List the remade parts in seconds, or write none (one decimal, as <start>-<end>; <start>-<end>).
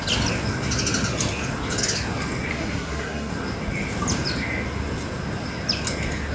2.5-3.3